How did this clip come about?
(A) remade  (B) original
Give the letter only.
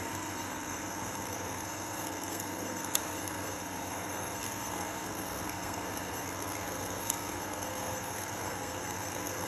A